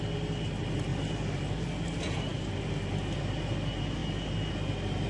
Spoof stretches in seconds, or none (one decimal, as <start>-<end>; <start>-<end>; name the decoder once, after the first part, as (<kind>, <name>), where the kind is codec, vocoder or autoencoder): none